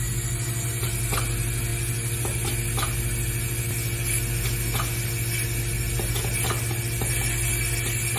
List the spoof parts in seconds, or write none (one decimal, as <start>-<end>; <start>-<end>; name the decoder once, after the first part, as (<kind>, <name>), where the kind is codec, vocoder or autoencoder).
none